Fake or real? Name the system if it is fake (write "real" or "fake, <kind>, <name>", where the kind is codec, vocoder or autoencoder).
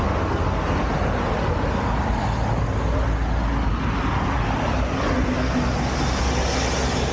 real